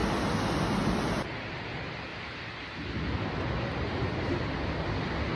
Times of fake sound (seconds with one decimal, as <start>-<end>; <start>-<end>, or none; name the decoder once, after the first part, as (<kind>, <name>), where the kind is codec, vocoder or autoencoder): none